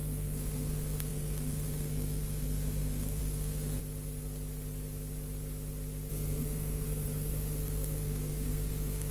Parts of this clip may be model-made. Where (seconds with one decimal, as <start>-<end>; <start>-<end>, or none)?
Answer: 0.0-3.8; 6.1-9.1